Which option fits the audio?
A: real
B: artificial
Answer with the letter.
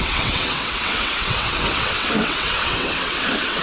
B